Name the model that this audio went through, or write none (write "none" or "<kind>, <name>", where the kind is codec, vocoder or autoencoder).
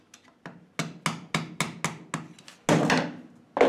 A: none